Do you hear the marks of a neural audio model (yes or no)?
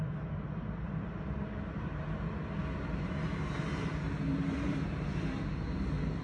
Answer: yes